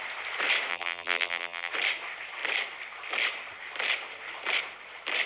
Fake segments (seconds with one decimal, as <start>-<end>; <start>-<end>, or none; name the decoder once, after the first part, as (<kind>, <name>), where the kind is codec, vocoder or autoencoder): 0.7-1.7 (vocoder, BigVGAN v2)